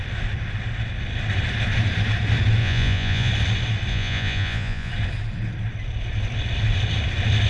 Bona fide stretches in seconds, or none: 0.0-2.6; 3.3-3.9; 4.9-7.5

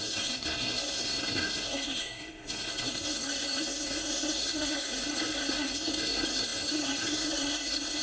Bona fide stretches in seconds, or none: none